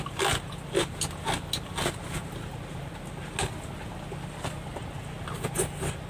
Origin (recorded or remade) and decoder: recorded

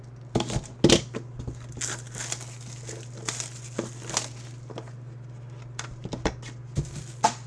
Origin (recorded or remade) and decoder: recorded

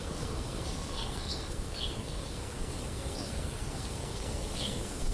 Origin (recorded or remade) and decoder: remade, codec, SNAC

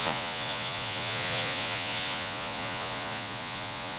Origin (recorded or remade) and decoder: remade, vocoder, Vocos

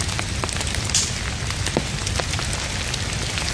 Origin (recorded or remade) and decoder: recorded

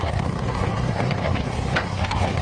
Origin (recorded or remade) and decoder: remade, codec, SNAC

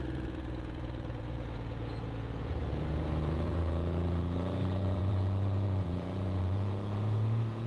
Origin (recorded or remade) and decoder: remade, vocoder, Vocos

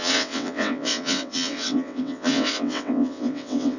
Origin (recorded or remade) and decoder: remade, vocoder, WaveNeXt